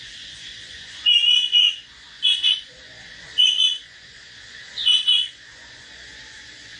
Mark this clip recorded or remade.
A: remade